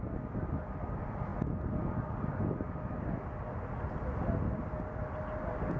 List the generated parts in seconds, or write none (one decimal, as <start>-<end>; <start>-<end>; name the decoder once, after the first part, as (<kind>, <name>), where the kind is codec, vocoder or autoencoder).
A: none